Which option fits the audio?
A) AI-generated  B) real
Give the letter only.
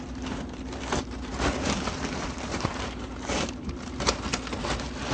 A